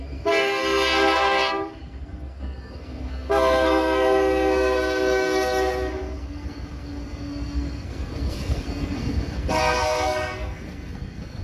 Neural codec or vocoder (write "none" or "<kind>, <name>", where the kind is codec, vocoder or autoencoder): codec, SNAC